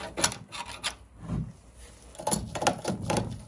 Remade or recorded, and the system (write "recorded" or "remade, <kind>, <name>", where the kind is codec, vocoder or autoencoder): recorded